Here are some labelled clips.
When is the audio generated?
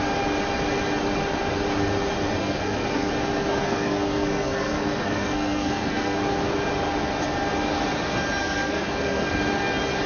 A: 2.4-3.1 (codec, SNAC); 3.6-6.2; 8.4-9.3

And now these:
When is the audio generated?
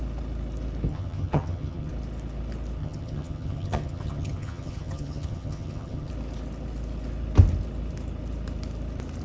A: 0.9-1.9 (vocoder, HiFi-GAN); 2.8-6.1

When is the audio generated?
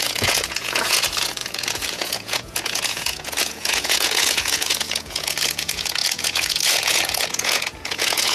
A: 0.0-8.3 (vocoder, Vocos)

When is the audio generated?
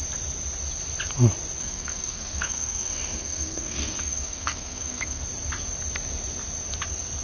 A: 1.6-5.2 (codec, SNAC)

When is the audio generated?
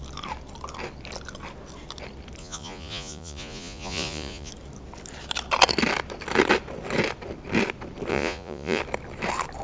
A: 2.4-4.5 (vocoder, Vocos); 8.1-8.8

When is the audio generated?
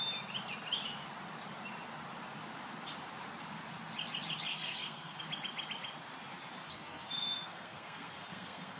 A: 4.5-5.2 (codec, SNAC); 6.7-8.8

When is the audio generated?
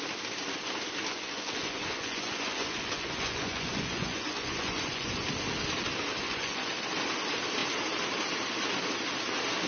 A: 1.1-5.2 (vocoder, Vocos); 6.2-6.7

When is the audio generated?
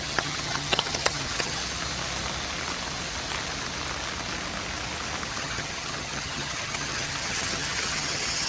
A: 0.0-1.6 (vocoder, HiFi-GAN); 5.3-8.5